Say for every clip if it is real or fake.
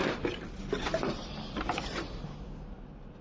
real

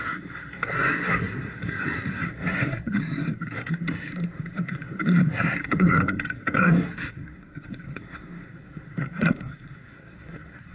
fake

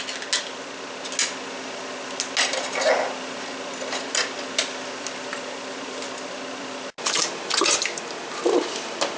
real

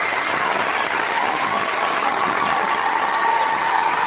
fake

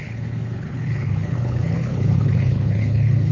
fake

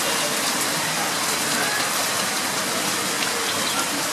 real